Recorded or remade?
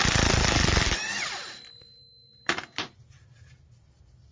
recorded